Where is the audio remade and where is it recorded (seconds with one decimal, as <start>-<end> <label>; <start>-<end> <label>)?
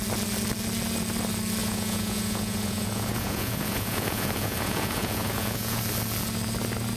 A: 0.0-1.6 recorded; 1.6-5.8 remade; 5.8-7.0 recorded